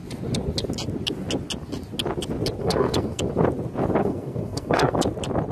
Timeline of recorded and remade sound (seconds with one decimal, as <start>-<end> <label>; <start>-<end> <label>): 0.0-2.6 recorded; 2.6-3.2 remade; 3.2-4.0 recorded; 4.0-5.0 remade; 5.0-5.5 recorded